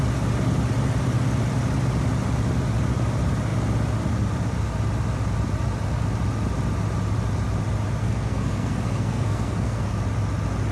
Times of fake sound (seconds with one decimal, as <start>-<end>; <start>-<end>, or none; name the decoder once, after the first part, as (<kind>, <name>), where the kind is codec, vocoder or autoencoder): 8.0-10.0 (codec, SNAC)